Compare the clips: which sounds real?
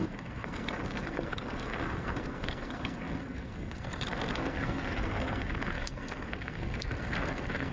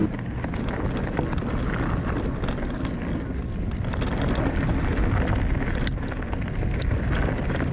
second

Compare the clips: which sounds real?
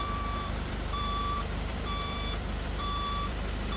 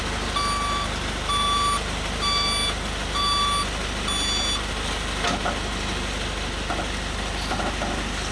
second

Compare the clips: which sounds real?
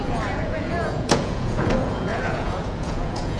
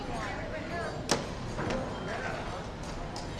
second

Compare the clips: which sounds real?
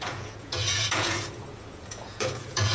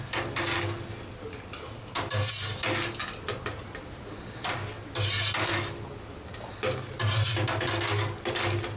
second